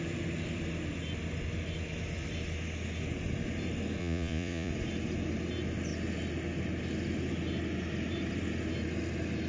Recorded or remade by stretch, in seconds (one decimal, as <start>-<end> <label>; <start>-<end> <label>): 0.0-4.0 recorded; 4.0-4.7 remade; 4.7-9.5 recorded